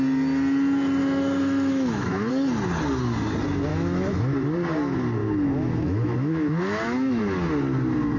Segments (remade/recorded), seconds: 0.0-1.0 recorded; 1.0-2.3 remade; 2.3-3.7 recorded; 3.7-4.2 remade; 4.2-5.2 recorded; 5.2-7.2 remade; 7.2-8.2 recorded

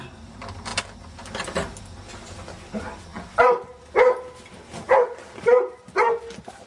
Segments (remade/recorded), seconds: 0.0-6.7 recorded

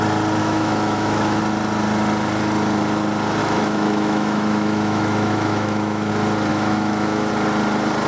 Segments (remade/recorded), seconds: 0.0-0.4 recorded; 0.4-1.4 remade; 1.4-3.4 recorded; 3.4-6.1 remade; 6.1-6.5 recorded; 6.5-7.3 remade; 7.3-8.1 recorded

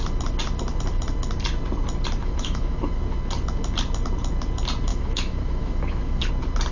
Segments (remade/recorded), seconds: 0.0-2.2 recorded; 2.2-3.0 remade; 3.0-4.9 recorded; 4.9-6.3 remade; 6.3-6.7 recorded

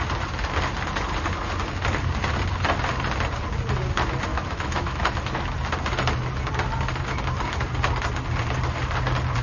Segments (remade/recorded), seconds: 0.0-4.3 recorded; 4.3-5.0 remade; 5.0-9.4 recorded

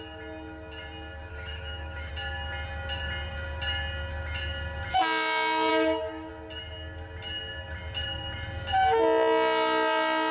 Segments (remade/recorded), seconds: 0.0-1.3 recorded; 1.3-2.1 remade; 2.1-5.7 recorded; 5.7-6.3 remade; 6.3-10.3 recorded